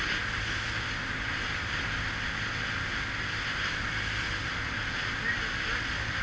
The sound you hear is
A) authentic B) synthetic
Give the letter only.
A